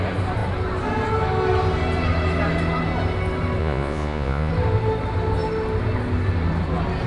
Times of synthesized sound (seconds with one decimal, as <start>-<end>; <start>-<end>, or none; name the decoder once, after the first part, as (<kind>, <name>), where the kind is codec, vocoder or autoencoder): 3.6-4.5 (vocoder, Vocos)